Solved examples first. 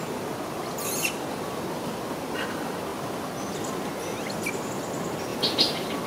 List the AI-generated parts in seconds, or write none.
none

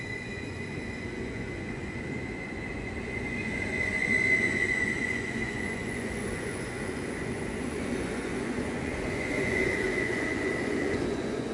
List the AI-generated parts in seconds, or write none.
0.0-11.5 (vocoder, Vocos)